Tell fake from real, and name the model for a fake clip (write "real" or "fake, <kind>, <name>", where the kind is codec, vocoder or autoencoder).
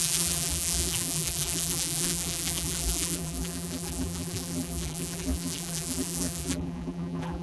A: fake, vocoder, BigVGAN v2